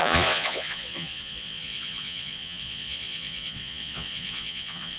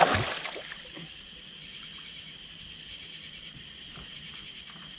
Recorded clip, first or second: second